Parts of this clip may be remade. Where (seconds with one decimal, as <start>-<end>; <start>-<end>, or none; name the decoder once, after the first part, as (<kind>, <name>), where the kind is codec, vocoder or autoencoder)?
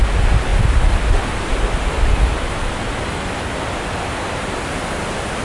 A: none